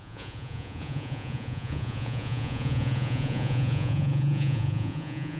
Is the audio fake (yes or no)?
yes